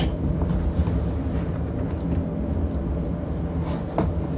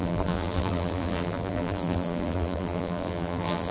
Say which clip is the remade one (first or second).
second